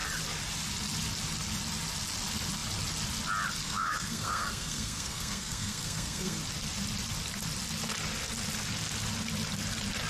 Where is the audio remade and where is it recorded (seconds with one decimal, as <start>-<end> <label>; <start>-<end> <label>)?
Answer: 0.0-3.6 recorded; 3.6-6.4 remade; 6.4-10.1 recorded